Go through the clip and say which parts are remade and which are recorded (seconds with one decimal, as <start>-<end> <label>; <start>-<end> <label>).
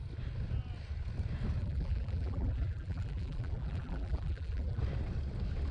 0.0-1.6 recorded; 1.6-4.8 remade; 4.8-5.7 recorded